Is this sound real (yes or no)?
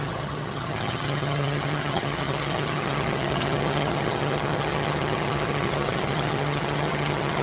no